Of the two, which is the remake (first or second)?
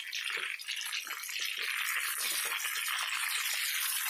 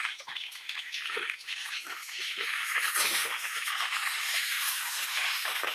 second